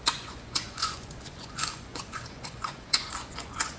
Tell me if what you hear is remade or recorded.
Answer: remade